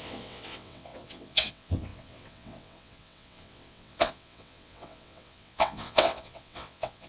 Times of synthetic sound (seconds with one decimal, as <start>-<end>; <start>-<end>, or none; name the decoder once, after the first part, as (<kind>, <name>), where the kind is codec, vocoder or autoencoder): 0.0-7.1 (vocoder, WaveNeXt)